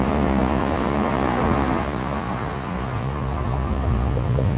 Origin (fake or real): fake